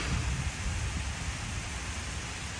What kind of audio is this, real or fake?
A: real